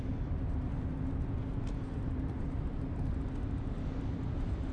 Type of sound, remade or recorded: recorded